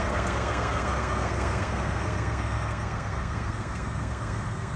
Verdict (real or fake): fake